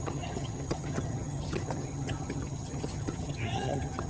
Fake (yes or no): yes